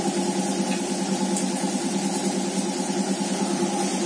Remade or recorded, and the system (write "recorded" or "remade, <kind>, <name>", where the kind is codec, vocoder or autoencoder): recorded